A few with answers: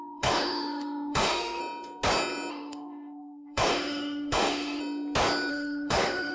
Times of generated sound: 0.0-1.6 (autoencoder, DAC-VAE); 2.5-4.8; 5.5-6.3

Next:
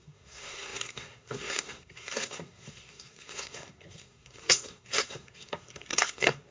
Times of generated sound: 0.0-6.5 (codec, SNAC)

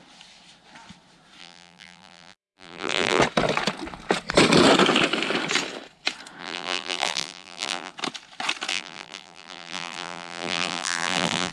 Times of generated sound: 1.4-3.2 (vocoder, BigVGAN v2); 6.4-7.9; 8.7-11.5

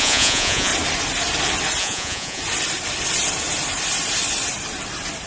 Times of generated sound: 0.0-0.7 (vocoder, Vocos); 1.8-2.4

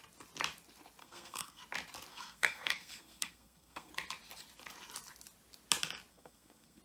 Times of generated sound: 1.0-1.6 (codec, SNAC); 2.1-3.9; 6.1-6.8

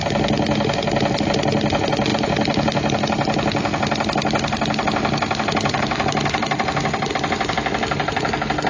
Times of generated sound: none

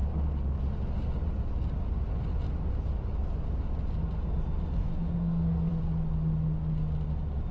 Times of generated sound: 4.8-5.7 (codec, SNAC)

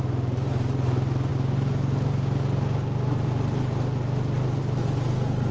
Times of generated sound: none